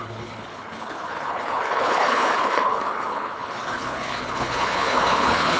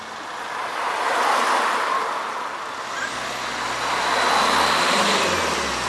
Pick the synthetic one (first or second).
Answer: first